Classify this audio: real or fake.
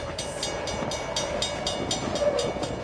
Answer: real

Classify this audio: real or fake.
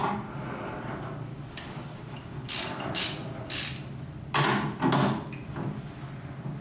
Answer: real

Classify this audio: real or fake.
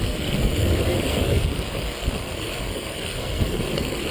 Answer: fake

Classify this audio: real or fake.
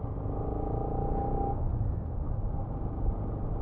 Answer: real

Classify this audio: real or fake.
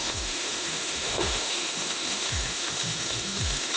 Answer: fake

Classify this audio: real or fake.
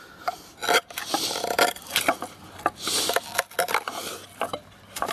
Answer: real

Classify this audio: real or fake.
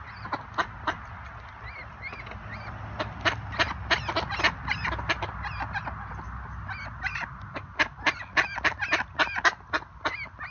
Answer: real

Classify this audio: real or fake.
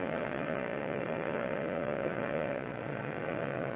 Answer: fake